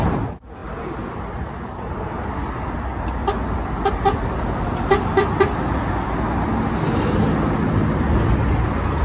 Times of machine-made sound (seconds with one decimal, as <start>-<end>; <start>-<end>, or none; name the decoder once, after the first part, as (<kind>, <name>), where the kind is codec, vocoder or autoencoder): none